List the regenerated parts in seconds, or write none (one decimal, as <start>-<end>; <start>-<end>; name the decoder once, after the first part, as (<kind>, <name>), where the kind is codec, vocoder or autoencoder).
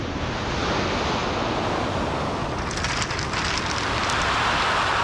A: none